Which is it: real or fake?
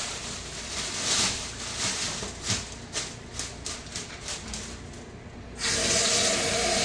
real